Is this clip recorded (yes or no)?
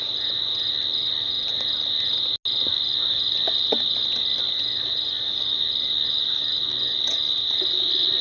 yes